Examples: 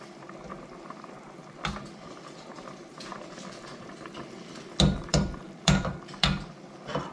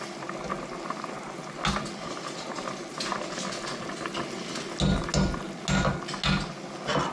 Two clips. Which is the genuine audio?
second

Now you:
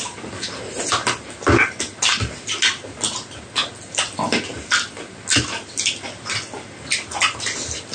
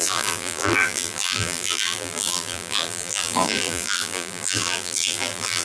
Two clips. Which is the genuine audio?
first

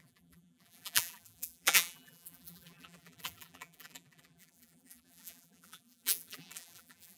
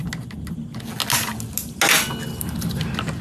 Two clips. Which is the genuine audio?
second